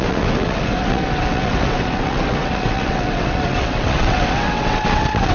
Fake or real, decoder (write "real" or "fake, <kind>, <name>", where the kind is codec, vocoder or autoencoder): fake, vocoder, WaveNeXt